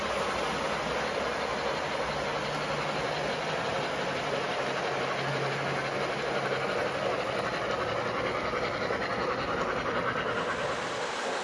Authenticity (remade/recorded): recorded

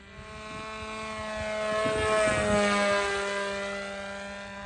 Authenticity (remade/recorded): recorded